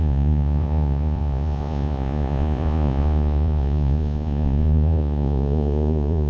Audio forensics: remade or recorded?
remade